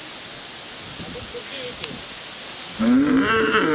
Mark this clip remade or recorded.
recorded